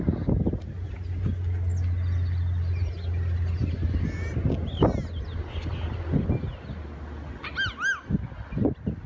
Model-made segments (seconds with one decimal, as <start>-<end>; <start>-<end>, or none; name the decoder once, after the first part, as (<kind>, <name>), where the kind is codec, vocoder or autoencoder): none